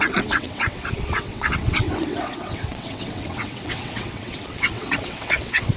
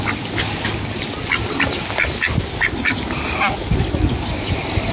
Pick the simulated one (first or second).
first